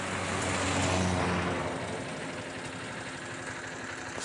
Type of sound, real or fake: real